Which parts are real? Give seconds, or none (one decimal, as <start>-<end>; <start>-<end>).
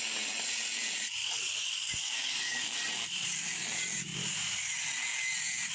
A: 0.0-1.2; 2.9-5.7